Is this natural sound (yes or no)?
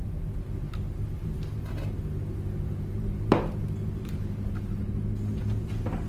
yes